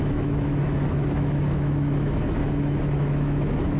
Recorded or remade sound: remade